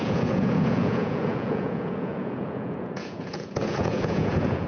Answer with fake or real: fake